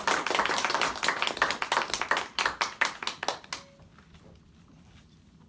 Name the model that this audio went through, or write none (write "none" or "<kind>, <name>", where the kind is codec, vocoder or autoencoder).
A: none